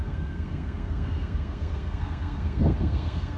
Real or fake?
fake